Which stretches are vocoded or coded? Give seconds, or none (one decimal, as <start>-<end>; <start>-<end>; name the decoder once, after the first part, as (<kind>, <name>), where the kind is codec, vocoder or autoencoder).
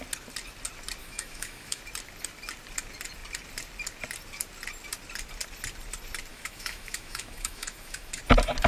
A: 1.0-1.8 (autoencoder, DAC-VAE); 6.3-8.2